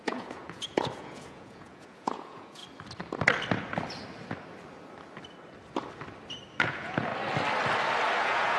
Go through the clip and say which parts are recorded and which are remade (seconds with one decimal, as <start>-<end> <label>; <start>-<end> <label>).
0.0-2.6 remade; 2.6-6.6 recorded; 6.6-7.1 remade; 7.1-8.2 recorded; 8.2-8.6 remade